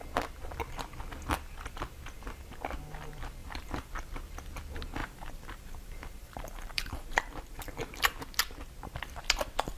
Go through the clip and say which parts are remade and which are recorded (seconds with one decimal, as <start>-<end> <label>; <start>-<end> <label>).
0.0-3.4 recorded; 3.4-3.9 remade; 3.9-5.0 recorded; 5.0-8.2 remade; 8.2-9.8 recorded